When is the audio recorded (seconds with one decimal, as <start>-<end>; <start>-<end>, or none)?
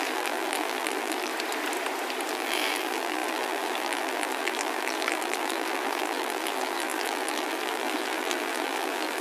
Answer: 1.3-2.3